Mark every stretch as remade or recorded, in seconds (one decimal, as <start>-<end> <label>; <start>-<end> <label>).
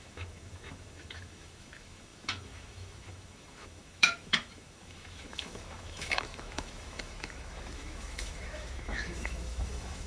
0.0-10.1 remade